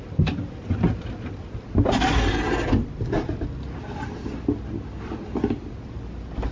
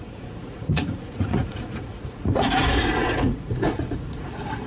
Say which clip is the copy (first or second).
second